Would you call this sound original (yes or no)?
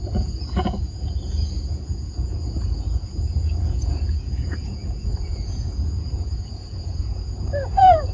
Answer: no